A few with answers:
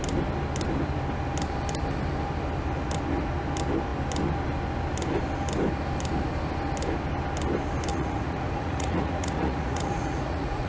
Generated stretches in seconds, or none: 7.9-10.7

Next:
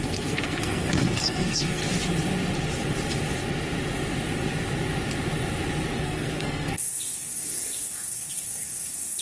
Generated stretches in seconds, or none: 0.0-1.8; 6.0-9.2

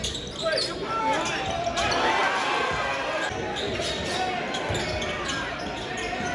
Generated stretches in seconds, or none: none

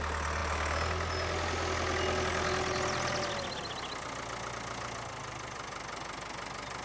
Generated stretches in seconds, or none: none

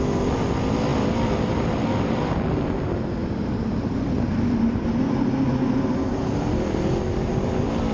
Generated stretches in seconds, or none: 0.9-1.8; 3.2-5.0

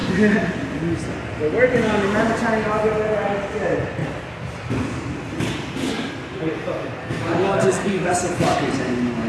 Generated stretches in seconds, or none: 7.0-8.1